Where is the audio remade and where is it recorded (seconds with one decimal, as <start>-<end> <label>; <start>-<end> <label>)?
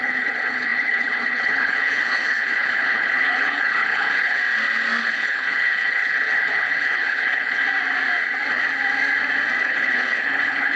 0.0-4.4 remade; 4.4-5.0 recorded; 5.0-7.6 remade; 7.6-9.6 recorded; 9.6-10.8 remade